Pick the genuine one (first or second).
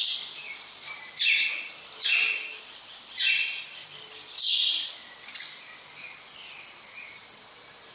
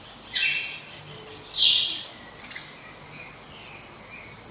second